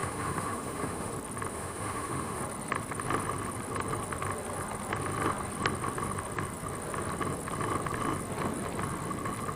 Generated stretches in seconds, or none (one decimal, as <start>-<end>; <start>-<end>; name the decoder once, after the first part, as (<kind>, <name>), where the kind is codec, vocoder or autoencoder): 0.0-1.1 (autoencoder, DAC-VAE); 1.5-2.4